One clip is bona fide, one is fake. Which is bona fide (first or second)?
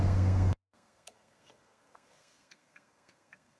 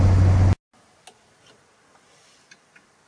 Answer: second